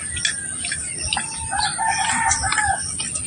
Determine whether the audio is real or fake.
real